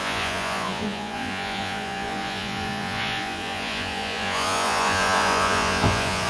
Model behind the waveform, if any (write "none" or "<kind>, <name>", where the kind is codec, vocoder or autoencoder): vocoder, Vocos